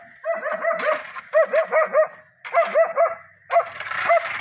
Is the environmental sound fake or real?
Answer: real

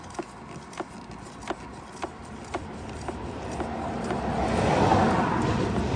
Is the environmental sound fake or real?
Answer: real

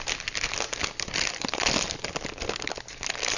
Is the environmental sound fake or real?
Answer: real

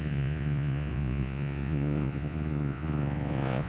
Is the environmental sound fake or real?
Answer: fake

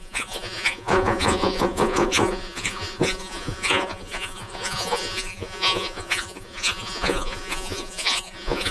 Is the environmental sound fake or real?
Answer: fake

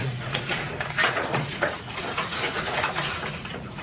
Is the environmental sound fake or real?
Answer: fake